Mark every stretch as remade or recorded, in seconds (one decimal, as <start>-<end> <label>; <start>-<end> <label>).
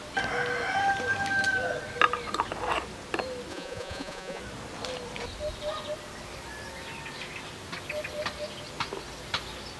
0.0-3.5 recorded; 3.5-4.4 remade; 4.4-9.8 recorded